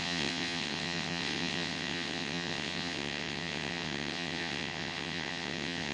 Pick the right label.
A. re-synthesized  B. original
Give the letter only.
A